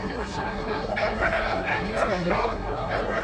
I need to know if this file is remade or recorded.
remade